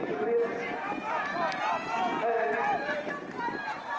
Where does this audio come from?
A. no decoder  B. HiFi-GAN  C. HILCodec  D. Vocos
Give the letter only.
A